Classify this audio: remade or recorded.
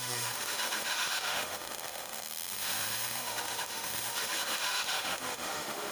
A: remade